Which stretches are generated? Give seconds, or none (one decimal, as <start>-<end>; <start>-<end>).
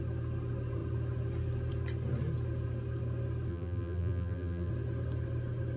3.5-4.7